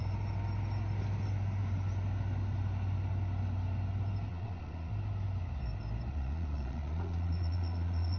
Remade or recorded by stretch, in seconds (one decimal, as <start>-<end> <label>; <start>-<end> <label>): 0.0-4.3 recorded; 4.3-4.9 remade; 4.9-6.1 recorded; 6.1-8.2 remade